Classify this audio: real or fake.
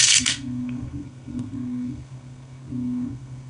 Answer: fake